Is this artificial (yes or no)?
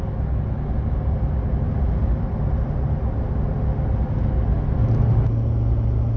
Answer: no